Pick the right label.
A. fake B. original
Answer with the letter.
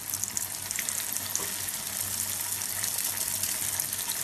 B